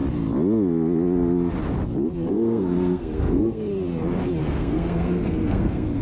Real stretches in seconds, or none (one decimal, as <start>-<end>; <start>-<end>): 0.0-2.3; 3.7-4.4